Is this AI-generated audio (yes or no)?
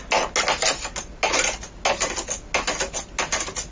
no